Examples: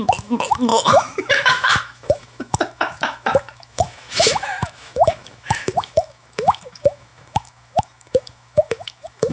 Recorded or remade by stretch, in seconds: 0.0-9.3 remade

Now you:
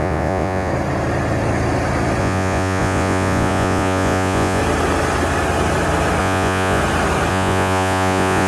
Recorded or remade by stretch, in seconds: 0.0-0.7 remade; 0.7-2.2 recorded; 2.2-4.6 remade; 4.6-6.2 recorded; 6.2-6.8 remade; 6.8-7.3 recorded; 7.3-8.5 remade

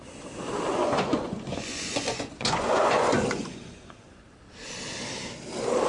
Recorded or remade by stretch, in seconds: 0.0-0.7 recorded; 0.7-4.2 remade; 4.2-5.9 recorded

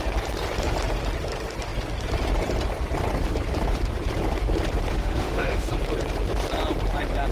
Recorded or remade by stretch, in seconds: 0.0-4.9 recorded; 4.9-5.7 remade; 5.7-7.3 recorded

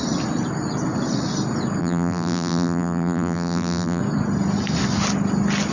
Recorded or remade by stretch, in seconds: 0.0-1.8 recorded; 1.8-4.0 remade; 4.0-5.7 recorded

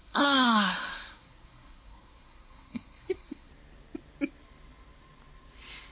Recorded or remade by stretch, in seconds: 0.0-3.5 remade; 3.5-5.9 recorded

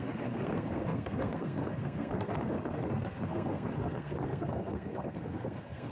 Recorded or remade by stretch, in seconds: 0.0-5.9 remade